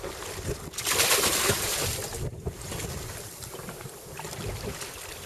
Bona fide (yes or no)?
no